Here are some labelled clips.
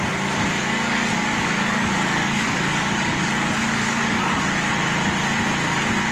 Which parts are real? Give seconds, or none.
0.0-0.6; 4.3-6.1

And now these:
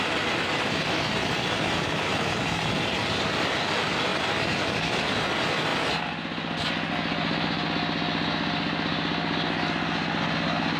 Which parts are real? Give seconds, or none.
0.0-10.8